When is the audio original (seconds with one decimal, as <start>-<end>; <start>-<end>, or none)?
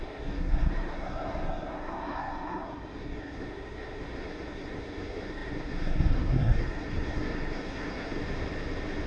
8.2-9.1